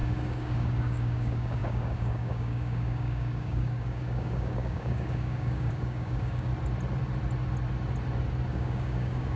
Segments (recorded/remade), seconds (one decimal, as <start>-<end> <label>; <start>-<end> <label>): 0.0-6.5 remade; 6.5-8.5 recorded; 8.5-9.4 remade